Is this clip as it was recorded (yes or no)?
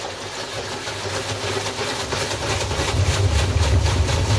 yes